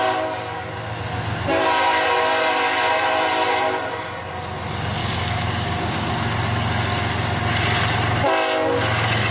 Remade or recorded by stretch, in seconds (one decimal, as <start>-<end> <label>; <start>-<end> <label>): 0.0-5.0 recorded; 5.0-6.1 remade; 6.1-9.3 recorded